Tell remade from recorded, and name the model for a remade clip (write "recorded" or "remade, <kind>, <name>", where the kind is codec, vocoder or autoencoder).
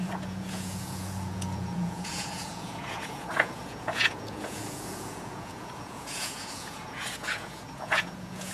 remade, vocoder, Vocos